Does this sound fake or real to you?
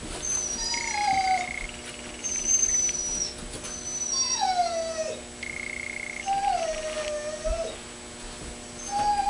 real